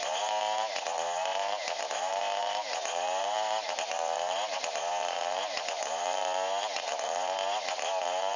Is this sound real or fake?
real